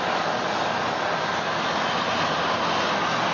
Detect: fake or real real